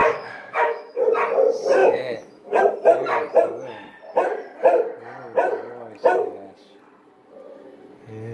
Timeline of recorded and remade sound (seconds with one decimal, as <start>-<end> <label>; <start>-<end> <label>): 0.0-1.0 remade; 1.0-1.8 recorded; 1.8-2.6 remade; 2.6-8.3 recorded